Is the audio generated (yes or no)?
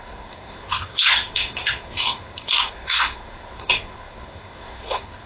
yes